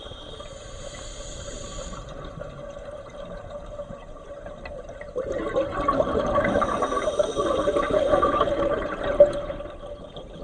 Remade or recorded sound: recorded